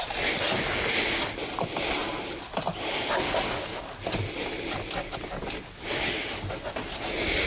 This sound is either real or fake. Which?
real